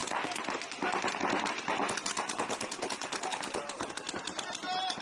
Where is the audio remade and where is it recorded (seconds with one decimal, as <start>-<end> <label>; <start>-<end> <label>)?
0.0-5.0 recorded